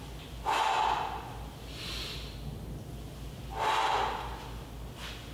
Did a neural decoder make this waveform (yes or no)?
no